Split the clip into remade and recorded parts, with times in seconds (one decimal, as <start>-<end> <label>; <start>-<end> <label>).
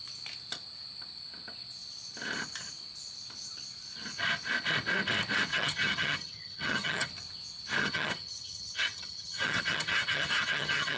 0.0-5.5 recorded; 5.5-7.1 remade; 7.1-7.8 recorded; 7.8-11.0 remade